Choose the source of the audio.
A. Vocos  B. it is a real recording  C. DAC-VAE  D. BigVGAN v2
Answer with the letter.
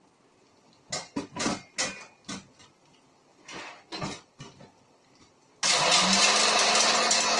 B